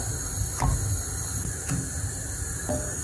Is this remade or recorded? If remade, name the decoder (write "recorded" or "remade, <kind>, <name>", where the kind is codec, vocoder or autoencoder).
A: recorded